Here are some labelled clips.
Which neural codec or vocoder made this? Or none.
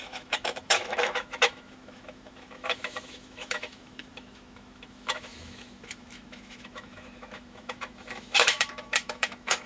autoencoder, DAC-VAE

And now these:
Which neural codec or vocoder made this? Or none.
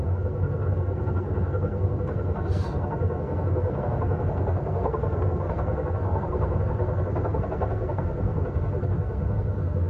codec, SNAC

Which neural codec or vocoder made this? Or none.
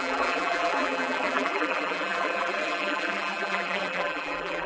vocoder, BigVGAN v2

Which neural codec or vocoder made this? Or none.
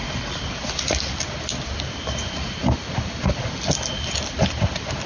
none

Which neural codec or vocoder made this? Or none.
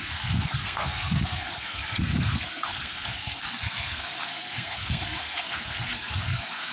codec, SNAC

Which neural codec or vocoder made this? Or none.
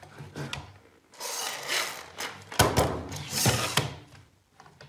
none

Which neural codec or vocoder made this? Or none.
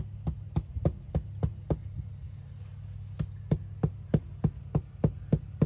none